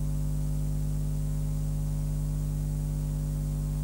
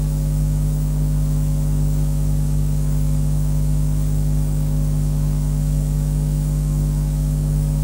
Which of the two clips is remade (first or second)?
second